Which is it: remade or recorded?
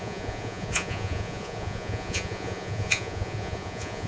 remade